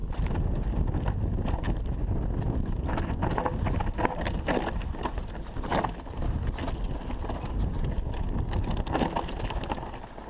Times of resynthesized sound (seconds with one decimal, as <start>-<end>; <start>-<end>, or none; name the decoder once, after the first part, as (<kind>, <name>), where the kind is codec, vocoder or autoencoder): 0.0-0.8 (vocoder, BigVGAN v2)